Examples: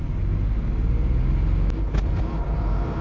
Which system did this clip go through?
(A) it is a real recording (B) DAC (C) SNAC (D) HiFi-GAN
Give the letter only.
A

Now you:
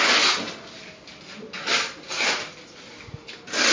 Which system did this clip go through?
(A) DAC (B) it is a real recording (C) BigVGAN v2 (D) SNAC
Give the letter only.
B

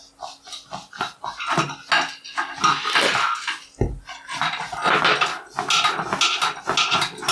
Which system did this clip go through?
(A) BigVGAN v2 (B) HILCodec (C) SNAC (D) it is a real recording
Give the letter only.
D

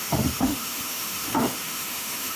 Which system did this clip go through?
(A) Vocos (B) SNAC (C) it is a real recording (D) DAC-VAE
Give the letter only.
D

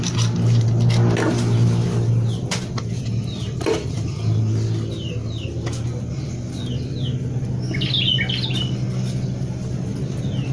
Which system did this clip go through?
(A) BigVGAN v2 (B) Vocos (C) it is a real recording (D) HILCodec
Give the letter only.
C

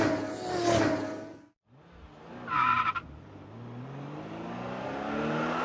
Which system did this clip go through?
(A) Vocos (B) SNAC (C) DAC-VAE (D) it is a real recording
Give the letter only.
D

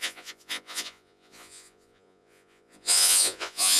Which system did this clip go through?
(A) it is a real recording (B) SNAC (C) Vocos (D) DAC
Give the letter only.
C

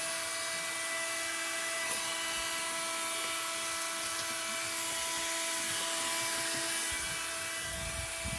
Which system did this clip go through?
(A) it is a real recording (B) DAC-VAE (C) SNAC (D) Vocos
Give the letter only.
A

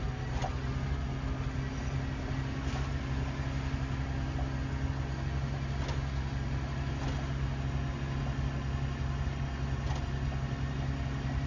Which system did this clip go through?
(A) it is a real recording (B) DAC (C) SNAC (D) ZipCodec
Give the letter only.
A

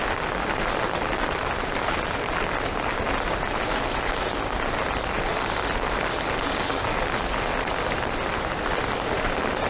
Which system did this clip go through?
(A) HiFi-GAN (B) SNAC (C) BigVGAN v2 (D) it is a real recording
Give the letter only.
D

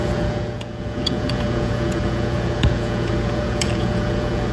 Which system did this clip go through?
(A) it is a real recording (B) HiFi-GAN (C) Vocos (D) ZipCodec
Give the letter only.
C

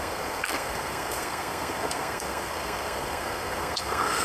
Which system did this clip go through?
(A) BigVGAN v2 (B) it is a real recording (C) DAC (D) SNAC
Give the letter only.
D